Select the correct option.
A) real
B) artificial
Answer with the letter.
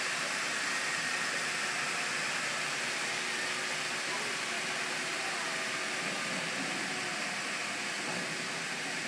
A